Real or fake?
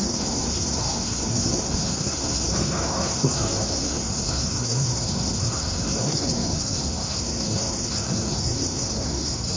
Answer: fake